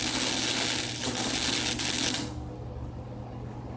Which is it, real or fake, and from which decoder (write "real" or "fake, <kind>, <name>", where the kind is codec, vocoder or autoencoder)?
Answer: real